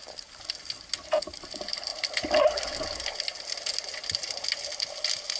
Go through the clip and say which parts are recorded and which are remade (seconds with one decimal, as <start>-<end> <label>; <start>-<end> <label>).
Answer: 0.0-5.4 recorded

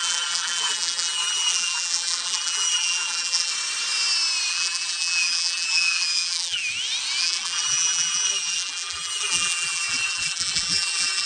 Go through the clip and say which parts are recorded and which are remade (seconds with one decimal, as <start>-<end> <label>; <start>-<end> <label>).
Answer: 0.0-3.5 remade; 3.5-4.5 recorded; 4.5-6.6 remade; 6.6-7.2 recorded; 7.2-11.3 remade

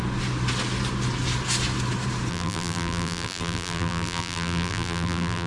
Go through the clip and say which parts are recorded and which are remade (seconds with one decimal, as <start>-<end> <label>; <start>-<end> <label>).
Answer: 0.0-2.3 recorded; 2.3-5.5 remade

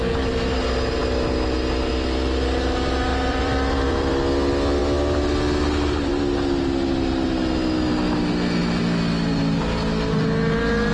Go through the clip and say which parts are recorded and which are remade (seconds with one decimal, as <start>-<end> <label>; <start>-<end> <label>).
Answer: 0.0-3.1 recorded; 3.1-4.1 remade; 4.1-10.9 recorded